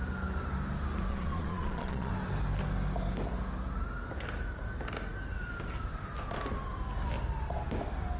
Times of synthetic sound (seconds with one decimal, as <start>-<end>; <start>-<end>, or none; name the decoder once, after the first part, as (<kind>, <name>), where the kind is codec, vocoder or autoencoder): 1.1-2.1 (vocoder, Vocos)